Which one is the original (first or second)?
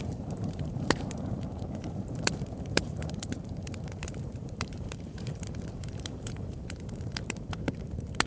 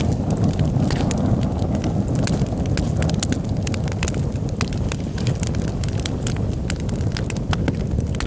second